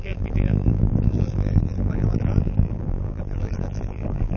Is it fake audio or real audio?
fake